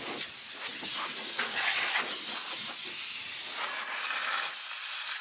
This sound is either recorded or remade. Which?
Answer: recorded